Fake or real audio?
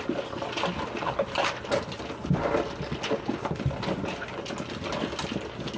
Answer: real